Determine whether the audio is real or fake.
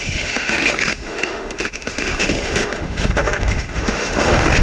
fake